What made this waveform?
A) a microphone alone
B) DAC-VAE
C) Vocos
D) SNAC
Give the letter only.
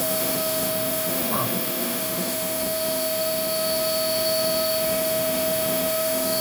B